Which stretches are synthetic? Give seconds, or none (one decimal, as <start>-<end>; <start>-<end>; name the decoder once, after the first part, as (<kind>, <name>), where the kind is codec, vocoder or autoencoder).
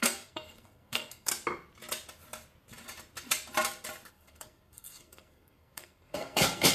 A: 0.0-1.3 (codec, SNAC); 4.1-6.7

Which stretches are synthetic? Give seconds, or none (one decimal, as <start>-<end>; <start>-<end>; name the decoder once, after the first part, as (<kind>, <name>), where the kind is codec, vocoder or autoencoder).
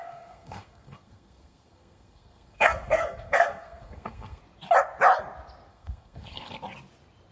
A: 0.0-4.4 (codec, SNAC); 5.7-6.5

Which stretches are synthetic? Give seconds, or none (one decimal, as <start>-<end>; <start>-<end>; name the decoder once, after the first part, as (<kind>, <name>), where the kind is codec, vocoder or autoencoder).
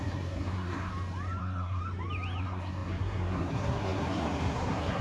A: 0.0-0.9 (codec, SNAC); 1.4-1.8; 2.4-5.0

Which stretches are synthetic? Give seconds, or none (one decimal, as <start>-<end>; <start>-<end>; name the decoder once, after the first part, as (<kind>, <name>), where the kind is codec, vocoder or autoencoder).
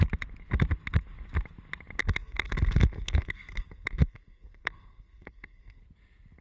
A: 2.0-5.8 (codec, SNAC)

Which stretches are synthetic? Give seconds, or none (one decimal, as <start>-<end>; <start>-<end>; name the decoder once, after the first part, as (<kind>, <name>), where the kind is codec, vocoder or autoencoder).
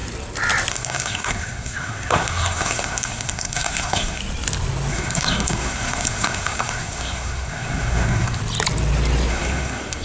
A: 0.7-4.2 (codec, SNAC); 4.9-8.4; 9.3-10.0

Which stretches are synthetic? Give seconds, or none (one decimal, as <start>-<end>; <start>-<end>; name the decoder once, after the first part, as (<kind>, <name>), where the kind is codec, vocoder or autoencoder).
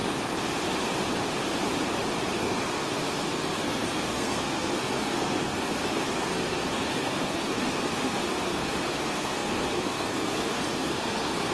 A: 2.4-11.5 (codec, SNAC)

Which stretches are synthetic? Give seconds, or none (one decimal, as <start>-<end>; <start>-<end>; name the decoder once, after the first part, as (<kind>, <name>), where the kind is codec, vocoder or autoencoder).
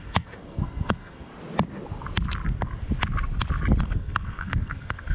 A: 0.0-1.3 (codec, SNAC); 3.8-5.1